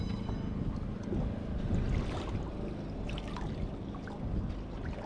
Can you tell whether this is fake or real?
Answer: real